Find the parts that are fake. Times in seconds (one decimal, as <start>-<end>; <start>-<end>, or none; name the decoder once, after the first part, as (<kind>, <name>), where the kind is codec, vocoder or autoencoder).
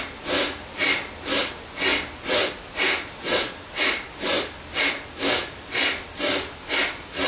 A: none